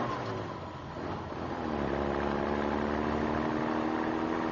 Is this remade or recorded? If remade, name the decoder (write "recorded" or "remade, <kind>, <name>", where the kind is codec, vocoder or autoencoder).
recorded